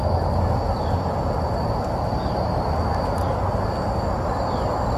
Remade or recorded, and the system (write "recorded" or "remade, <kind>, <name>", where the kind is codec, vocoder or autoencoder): recorded